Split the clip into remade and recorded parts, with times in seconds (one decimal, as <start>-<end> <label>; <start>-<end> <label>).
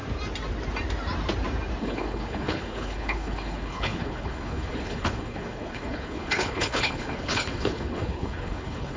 0.0-1.8 recorded; 1.8-9.0 remade